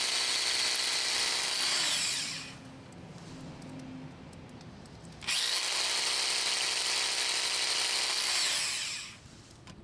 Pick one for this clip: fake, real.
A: real